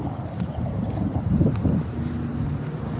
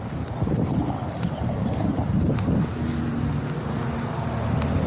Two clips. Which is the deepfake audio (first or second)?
first